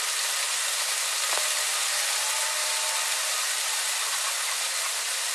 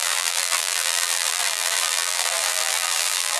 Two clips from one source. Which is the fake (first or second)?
second